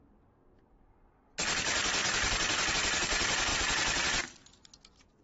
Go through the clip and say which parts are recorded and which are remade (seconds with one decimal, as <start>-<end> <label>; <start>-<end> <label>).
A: 0.0-5.2 recorded